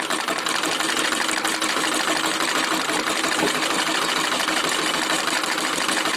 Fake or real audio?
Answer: real